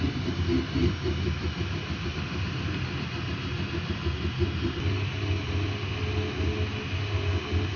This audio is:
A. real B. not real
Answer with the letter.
A